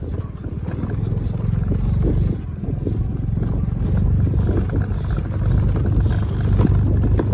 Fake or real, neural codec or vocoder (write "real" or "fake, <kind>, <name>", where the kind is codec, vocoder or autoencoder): real